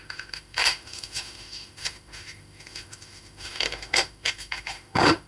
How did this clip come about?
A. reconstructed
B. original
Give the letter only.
A